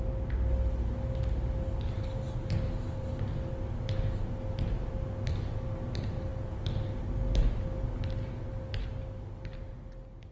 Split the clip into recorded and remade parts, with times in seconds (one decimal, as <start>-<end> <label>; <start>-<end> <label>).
0.0-10.3 recorded